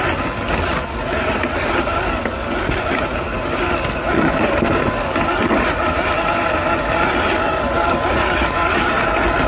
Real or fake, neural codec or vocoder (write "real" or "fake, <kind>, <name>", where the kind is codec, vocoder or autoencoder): real